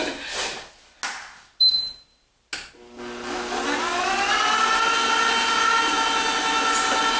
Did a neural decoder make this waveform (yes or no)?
no